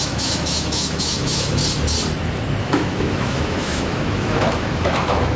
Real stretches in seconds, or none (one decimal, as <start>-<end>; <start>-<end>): 1.6-2.6